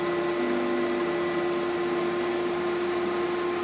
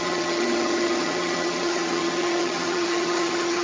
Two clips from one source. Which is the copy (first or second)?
second